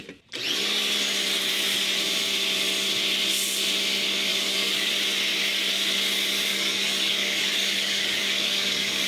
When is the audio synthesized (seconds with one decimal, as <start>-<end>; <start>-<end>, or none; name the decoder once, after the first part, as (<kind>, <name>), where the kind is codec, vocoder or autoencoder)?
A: 4.3-4.9 (codec, DAC); 6.5-9.1